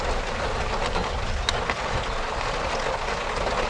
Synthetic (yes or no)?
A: no